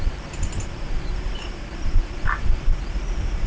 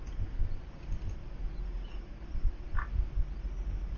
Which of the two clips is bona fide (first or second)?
second